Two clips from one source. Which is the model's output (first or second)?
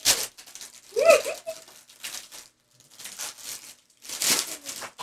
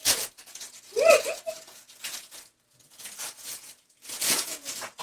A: second